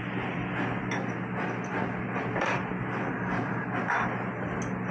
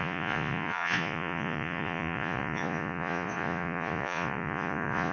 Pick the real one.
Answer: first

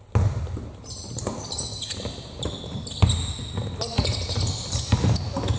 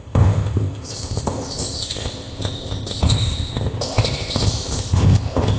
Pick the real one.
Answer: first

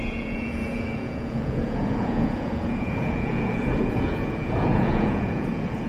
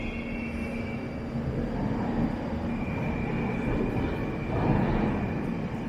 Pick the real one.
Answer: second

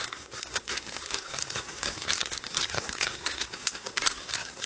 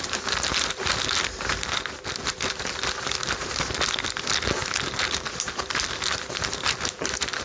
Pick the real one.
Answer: second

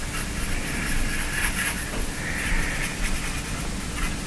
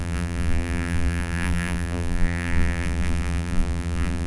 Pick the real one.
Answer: first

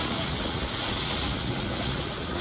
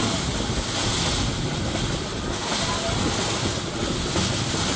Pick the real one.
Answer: second